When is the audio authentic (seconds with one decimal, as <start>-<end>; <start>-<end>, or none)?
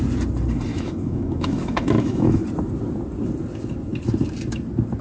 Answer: 0.0-0.7; 2.4-5.0